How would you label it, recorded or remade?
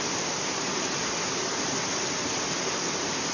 recorded